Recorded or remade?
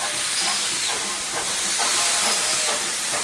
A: remade